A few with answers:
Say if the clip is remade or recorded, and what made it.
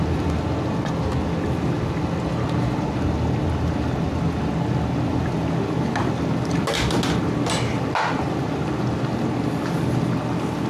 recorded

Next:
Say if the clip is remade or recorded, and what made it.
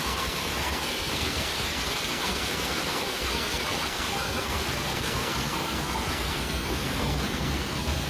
remade, codec, SNAC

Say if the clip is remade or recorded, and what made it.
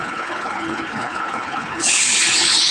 remade, codec, HILCodec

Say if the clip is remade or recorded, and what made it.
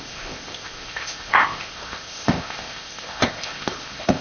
remade, codec, ZipCodec